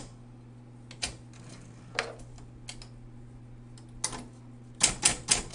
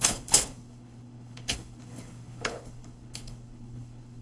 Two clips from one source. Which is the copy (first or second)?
second